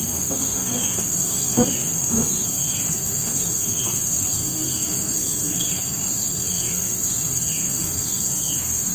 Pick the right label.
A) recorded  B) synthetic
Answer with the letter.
B